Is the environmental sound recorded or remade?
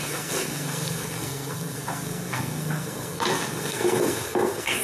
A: remade